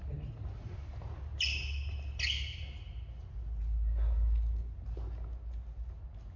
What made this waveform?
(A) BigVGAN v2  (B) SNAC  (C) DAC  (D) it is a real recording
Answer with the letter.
D